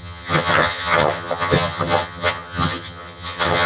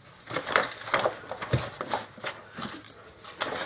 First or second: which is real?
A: second